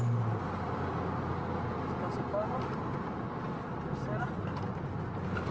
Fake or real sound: real